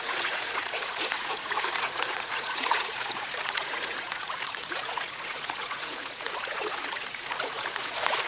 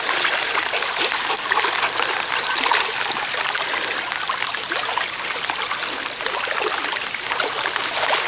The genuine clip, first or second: second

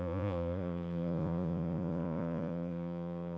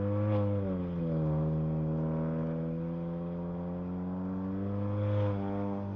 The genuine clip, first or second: second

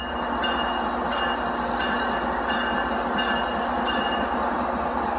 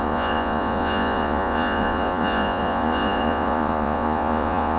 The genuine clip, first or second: first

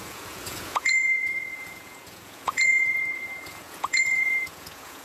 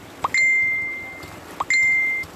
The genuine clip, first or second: second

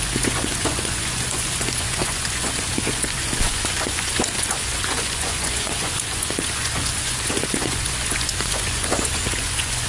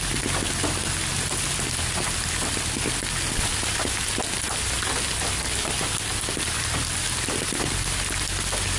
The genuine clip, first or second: second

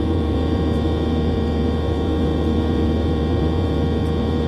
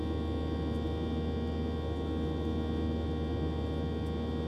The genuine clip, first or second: second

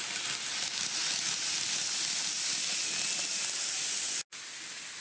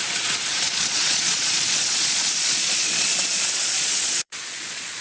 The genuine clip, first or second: first